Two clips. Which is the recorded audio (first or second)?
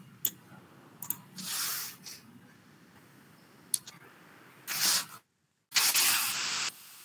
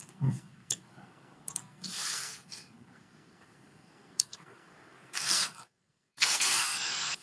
first